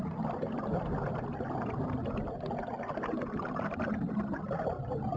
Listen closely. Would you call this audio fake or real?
real